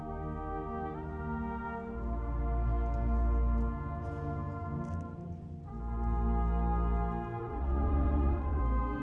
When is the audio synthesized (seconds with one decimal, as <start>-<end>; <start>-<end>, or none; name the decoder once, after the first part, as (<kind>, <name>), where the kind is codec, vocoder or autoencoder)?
7.4-8.6 (vocoder, WaveNeXt)